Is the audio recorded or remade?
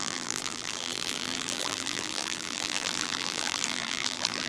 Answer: remade